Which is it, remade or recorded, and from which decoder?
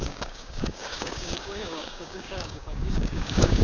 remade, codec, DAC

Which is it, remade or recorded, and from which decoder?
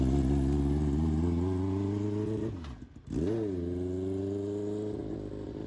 recorded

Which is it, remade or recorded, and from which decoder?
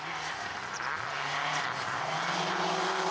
recorded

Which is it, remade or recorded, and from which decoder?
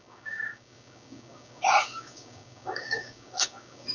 remade, codec, DAC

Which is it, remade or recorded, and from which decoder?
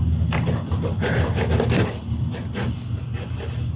recorded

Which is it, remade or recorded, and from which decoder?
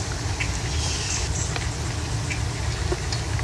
recorded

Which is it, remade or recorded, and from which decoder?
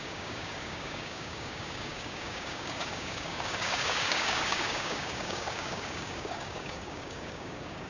remade, codec, DAC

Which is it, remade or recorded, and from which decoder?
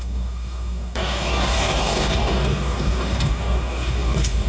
remade, codec, DAC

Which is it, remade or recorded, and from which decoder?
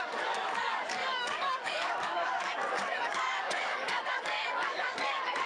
remade, codec, DAC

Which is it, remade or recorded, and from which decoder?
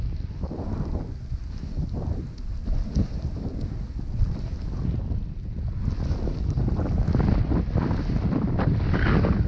recorded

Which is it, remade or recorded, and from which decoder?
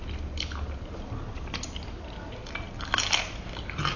recorded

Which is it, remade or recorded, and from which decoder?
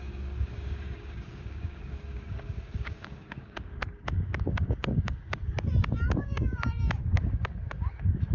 remade, codec, DAC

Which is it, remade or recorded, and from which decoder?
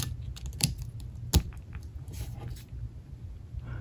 recorded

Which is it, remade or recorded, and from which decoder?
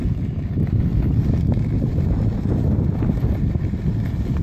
recorded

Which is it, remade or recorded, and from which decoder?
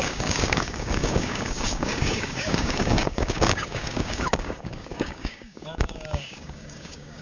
remade, codec, DAC